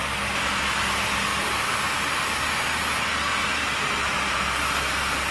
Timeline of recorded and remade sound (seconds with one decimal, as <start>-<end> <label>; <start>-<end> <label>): 0.0-5.3 recorded